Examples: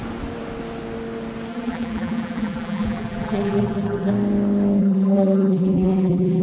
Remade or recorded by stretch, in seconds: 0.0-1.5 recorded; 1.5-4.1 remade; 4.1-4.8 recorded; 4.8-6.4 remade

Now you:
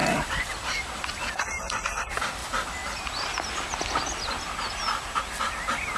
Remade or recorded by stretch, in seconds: 0.0-2.0 recorded; 2.0-2.4 remade; 2.4-5.2 recorded; 5.2-6.0 remade